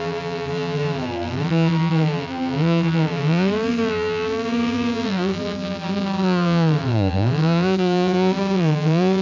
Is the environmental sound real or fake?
fake